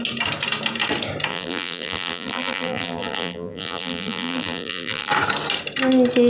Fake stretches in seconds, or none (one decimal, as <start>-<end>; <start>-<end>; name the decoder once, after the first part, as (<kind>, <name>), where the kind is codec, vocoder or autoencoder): 1.3-5.1 (vocoder, BigVGAN v2)